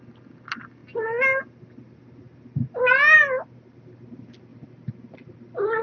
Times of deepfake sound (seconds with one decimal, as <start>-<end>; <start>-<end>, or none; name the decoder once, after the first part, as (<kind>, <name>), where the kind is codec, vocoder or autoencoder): 4.5-5.8 (vocoder, BigVGAN v2)